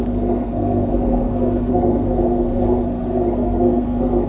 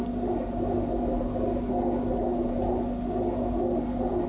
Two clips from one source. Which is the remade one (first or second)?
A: first